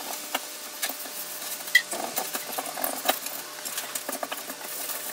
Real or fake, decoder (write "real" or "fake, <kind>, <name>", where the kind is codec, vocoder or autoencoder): real